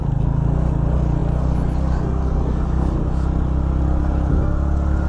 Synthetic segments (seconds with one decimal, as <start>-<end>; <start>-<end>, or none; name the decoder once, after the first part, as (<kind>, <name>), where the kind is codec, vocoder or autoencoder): none

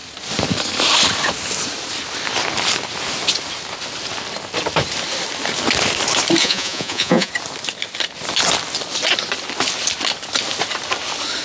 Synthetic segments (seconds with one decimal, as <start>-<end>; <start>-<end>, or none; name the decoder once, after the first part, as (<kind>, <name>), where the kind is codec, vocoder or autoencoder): 6.4-7.3 (vocoder, Vocos)

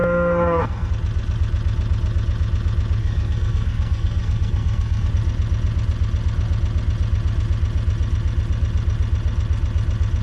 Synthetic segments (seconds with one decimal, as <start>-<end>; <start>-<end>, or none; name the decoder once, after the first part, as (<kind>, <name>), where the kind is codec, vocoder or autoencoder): 0.0-0.9 (codec, SNAC); 3.0-5.1

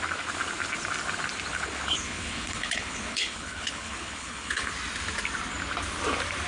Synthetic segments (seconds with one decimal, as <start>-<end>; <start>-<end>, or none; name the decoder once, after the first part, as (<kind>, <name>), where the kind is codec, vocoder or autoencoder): 1.5-4.7 (codec, HILCodec)

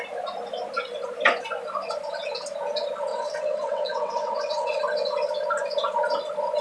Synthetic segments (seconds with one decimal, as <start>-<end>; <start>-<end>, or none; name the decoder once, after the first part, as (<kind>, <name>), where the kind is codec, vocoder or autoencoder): 3.1-4.8 (vocoder, WaveNeXt)

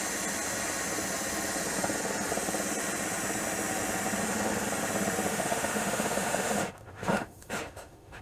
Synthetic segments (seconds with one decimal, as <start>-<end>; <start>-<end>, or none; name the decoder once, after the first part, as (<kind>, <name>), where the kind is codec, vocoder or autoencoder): 5.3-8.2 (autoencoder, DAC-VAE)

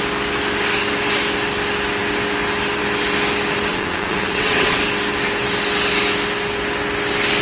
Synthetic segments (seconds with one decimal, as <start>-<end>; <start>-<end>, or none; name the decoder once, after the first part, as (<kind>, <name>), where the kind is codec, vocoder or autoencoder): 3.7-4.8 (vocoder, WaveNeXt)